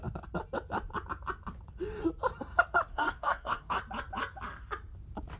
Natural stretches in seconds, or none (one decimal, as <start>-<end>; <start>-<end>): 0.0-2.9; 3.8-5.4